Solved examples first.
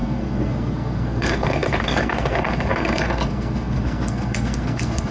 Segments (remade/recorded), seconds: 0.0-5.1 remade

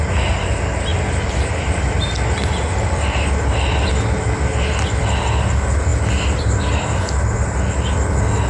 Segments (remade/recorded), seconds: 0.0-8.5 recorded

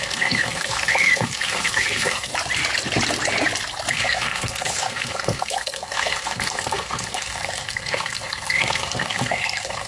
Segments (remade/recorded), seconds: 0.0-2.3 remade; 2.3-3.9 recorded; 3.9-9.9 remade

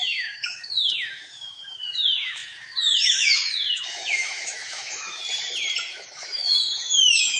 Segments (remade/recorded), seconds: 0.0-5.2 remade; 5.2-5.9 recorded; 5.9-7.4 remade

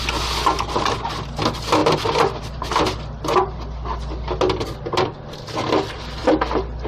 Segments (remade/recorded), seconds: 0.0-6.9 recorded

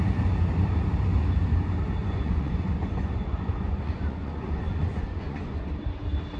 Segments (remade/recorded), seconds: 0.0-2.0 recorded; 2.0-5.6 remade; 5.6-6.4 recorded

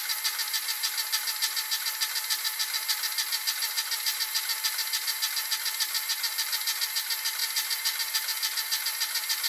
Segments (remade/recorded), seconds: 0.0-3.6 recorded; 3.6-4.2 remade; 4.2-9.5 recorded

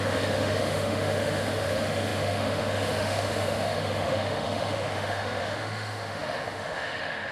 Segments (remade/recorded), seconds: 0.0-7.3 remade